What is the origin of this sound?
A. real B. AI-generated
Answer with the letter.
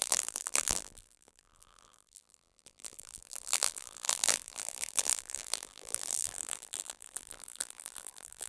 B